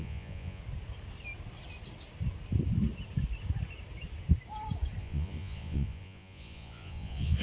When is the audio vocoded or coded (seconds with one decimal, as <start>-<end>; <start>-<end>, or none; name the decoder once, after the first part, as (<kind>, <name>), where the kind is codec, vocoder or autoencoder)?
0.0-0.6 (vocoder, Vocos); 5.0-7.4